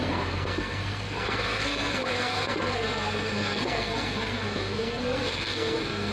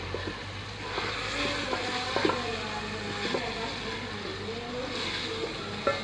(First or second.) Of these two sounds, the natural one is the second